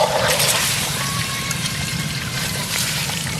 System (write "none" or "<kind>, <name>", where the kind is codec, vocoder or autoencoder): vocoder, BigVGAN v2